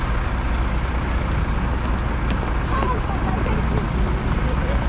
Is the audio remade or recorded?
recorded